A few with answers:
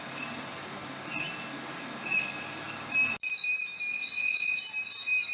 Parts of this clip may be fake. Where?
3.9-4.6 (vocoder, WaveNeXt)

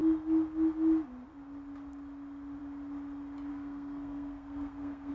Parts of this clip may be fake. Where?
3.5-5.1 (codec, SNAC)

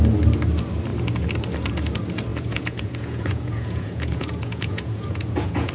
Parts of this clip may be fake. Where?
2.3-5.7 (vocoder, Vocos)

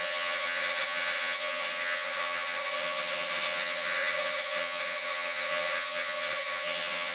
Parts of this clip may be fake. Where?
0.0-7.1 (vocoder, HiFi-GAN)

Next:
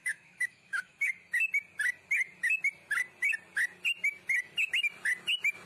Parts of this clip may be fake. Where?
0.0-1.1 (autoencoder, DAC-VAE)

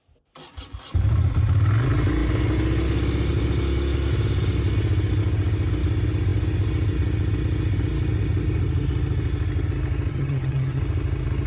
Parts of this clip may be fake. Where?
10.1-10.8 (vocoder, HiFi-GAN)

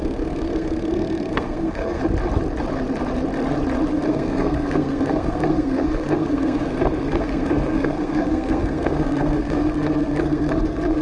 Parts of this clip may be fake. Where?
0.0-2.0 (codec, SNAC); 3.9-11.0